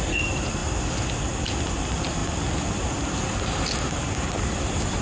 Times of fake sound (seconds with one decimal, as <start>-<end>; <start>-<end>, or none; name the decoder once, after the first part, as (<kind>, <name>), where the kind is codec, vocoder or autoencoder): none